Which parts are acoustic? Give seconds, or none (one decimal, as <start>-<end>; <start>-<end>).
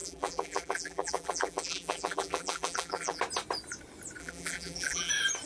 3.2-4.2; 5.1-5.5